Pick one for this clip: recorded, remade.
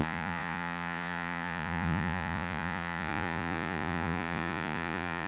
remade